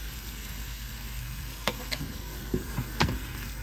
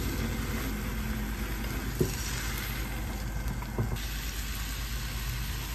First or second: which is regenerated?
first